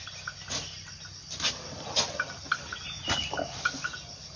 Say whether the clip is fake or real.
real